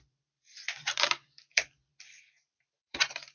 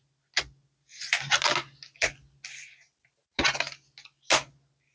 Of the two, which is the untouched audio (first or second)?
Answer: second